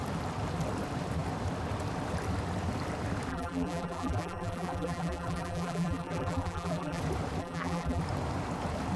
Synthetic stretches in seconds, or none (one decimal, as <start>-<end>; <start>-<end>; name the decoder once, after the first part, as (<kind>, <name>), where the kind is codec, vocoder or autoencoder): 3.3-7.0 (vocoder, BigVGAN v2); 7.4-8.0